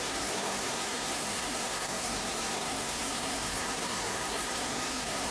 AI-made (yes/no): yes